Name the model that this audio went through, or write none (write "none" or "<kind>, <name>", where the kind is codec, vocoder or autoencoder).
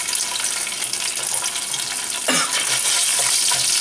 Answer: none